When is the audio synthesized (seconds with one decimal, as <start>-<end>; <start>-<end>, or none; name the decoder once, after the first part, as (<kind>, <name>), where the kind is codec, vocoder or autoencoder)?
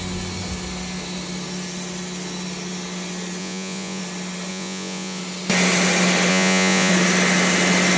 3.4-4.0 (vocoder, Vocos); 4.5-5.2; 6.3-6.9